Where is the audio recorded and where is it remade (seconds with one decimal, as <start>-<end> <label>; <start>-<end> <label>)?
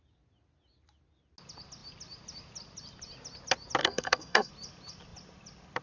0.0-3.8 recorded; 3.8-4.5 remade; 4.5-5.8 recorded